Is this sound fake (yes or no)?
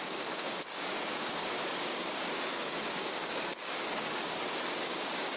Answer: yes